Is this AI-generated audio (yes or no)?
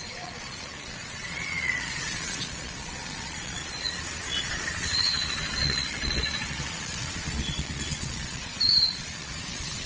yes